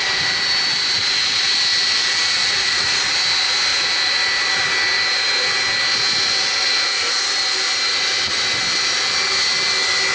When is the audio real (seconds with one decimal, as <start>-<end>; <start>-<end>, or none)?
0.0-2.4; 3.1-10.1